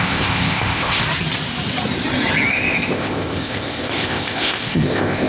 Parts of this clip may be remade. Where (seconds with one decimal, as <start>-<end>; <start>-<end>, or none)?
0.0-1.0; 2.5-5.3